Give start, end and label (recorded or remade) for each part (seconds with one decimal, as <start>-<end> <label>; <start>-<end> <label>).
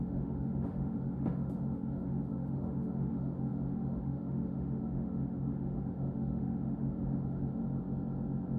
0.0-7.6 remade; 7.6-8.6 recorded